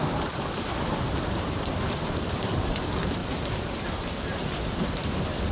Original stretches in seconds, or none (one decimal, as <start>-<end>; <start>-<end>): none